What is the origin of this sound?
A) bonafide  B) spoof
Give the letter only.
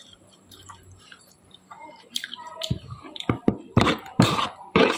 B